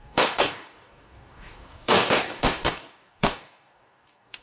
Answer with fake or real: fake